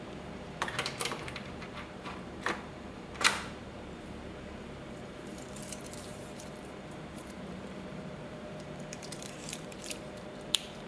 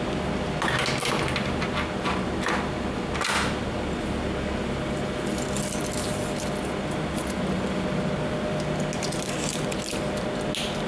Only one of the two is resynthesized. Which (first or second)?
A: first